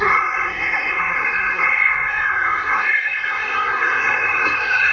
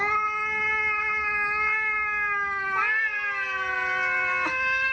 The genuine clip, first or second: second